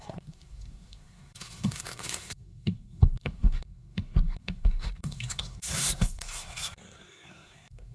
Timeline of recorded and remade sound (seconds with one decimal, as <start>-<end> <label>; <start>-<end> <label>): 0.0-7.9 remade